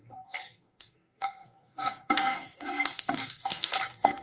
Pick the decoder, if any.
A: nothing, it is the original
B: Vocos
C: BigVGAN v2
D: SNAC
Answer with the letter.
D